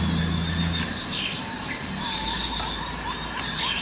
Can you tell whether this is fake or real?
real